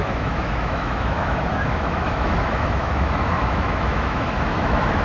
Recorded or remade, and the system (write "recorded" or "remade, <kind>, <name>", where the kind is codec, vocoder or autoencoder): remade, autoencoder, DAC-VAE